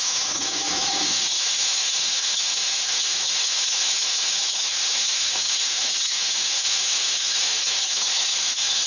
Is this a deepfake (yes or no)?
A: yes